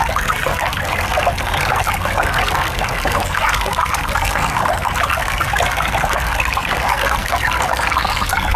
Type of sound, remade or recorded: remade